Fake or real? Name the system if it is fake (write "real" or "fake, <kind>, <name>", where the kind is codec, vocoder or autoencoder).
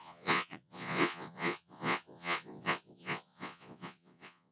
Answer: fake, vocoder, Vocos